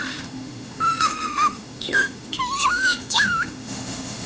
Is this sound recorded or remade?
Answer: remade